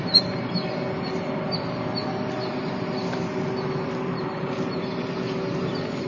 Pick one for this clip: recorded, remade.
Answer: recorded